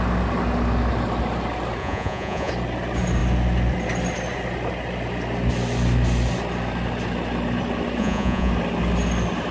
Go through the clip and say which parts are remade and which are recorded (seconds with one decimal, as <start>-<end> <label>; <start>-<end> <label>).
0.0-1.8 recorded; 1.8-2.5 remade; 2.5-8.0 recorded; 8.0-8.5 remade; 8.5-9.5 recorded